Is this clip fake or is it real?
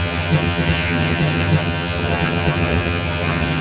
fake